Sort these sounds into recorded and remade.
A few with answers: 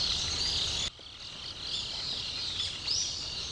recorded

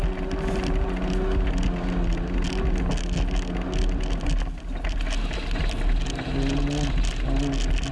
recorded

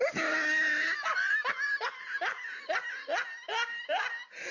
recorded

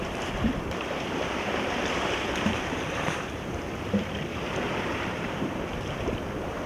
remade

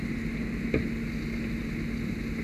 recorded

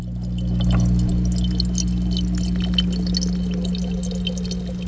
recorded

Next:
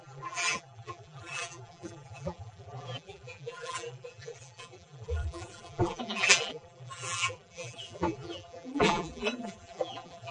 remade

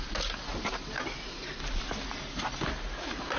recorded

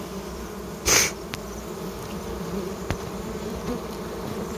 remade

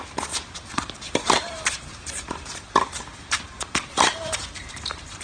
remade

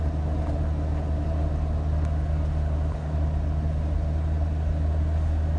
recorded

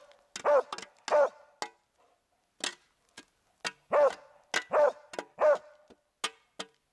recorded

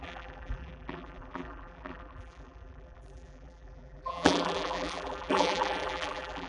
remade